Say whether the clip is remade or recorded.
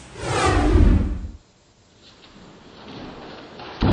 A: recorded